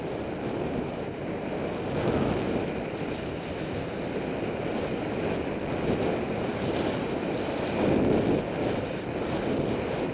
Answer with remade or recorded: recorded